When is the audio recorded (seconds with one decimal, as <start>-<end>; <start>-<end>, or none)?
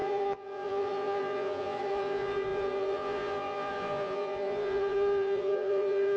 none